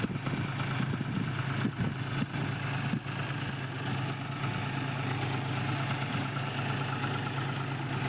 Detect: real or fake real